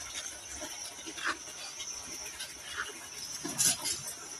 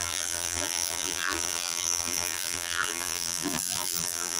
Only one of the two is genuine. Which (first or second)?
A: first